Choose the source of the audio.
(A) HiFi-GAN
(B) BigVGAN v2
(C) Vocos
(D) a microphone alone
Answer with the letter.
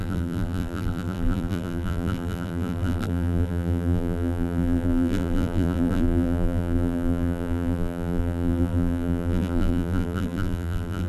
B